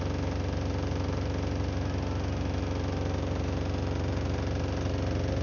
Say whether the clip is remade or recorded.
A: recorded